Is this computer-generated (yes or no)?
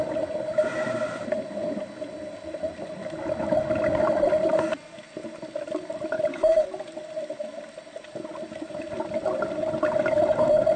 no